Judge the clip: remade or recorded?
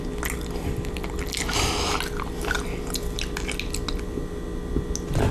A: recorded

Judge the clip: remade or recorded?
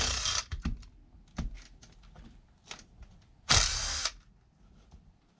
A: recorded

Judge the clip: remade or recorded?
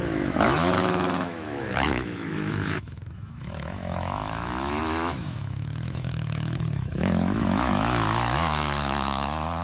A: remade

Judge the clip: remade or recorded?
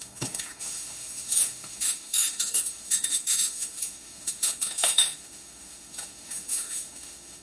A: remade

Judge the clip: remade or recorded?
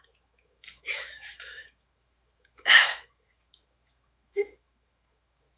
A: remade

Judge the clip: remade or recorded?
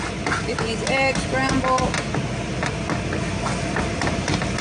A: recorded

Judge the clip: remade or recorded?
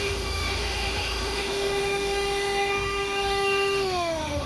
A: remade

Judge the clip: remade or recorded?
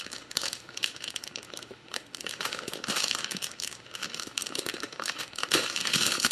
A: remade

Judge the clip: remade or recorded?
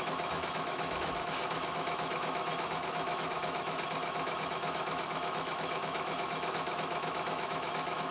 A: remade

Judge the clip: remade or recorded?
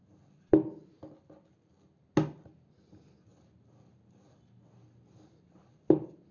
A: recorded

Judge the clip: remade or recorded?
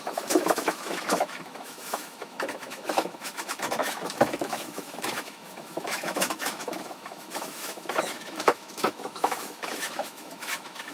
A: remade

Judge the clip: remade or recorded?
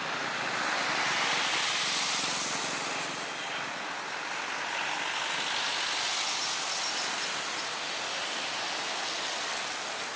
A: recorded